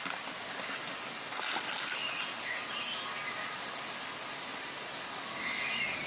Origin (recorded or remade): recorded